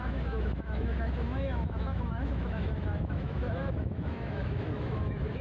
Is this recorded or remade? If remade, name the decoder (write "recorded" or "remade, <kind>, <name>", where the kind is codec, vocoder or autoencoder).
remade, autoencoder, DAC-VAE